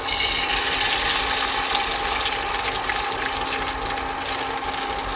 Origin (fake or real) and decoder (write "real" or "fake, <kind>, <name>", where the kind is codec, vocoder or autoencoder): real